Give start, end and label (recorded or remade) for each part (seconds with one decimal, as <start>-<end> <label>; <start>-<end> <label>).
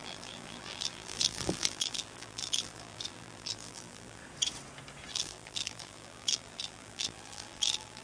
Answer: 0.0-4.2 remade; 4.2-5.1 recorded; 5.1-8.0 remade